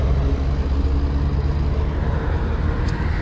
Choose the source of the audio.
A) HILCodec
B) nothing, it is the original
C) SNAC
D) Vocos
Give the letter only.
B